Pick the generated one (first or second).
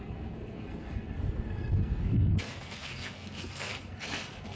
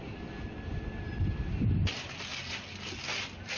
first